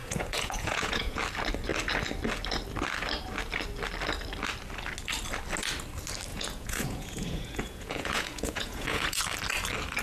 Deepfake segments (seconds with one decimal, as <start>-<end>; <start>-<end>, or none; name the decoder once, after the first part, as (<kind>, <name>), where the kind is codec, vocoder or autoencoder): 0.0-1.2 (vocoder, Vocos); 6.3-9.2

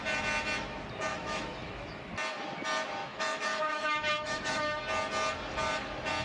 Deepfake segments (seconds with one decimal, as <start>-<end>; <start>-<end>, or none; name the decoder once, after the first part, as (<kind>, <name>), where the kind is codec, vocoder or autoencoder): 1.1-2.1 (autoencoder, DAC-VAE); 3.1-4.8

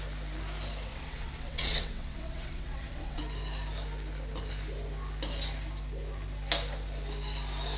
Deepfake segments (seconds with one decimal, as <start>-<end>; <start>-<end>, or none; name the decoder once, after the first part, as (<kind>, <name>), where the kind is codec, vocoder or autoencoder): 0.9-3.2 (vocoder, WaveNeXt)

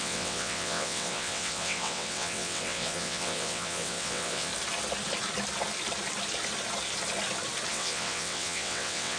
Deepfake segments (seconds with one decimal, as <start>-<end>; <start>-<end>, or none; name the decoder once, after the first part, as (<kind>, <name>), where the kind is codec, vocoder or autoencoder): 0.0-4.5 (vocoder, WaveNeXt); 7.7-9.2

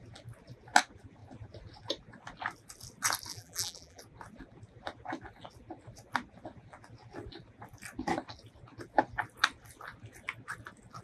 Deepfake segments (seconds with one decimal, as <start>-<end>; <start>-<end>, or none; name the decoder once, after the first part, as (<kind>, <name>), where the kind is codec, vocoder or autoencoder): 3.3-4.0 (vocoder, BigVGAN v2)

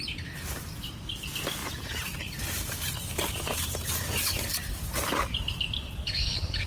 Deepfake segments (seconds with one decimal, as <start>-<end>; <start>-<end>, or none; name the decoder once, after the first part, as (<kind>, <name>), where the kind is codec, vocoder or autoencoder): 1.6-2.8 (vocoder, BigVGAN v2)